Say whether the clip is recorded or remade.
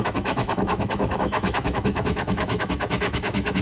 remade